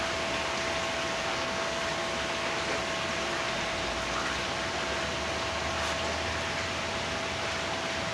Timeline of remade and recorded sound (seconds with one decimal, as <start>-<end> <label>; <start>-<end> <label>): 0.0-1.2 recorded; 1.2-1.8 remade; 1.8-8.1 recorded